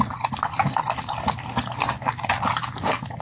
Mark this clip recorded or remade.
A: recorded